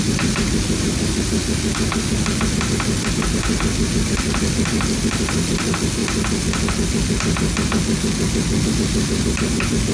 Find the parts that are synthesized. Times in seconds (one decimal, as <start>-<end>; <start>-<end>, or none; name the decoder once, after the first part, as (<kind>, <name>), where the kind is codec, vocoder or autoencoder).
0.0-1.4 (vocoder, BigVGAN v2); 2.7-6.0; 8.7-9.9